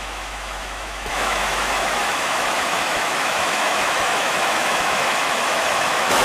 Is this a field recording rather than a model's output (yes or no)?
no